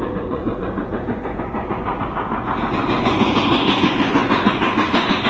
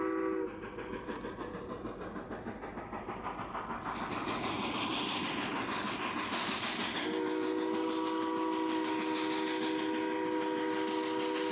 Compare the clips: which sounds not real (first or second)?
first